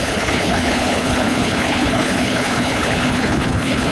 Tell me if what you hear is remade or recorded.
remade